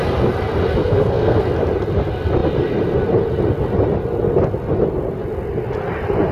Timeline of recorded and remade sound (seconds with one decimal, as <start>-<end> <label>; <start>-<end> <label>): 0.0-0.8 recorded; 0.8-1.4 remade; 1.4-6.3 recorded